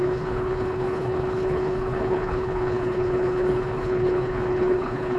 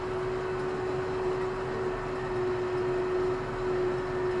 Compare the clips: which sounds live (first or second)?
second